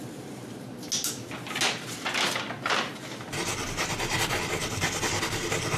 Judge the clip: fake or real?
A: real